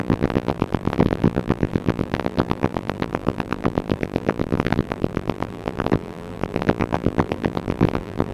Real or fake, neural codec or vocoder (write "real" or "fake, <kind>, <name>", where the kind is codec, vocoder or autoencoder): fake, vocoder, BigVGAN v2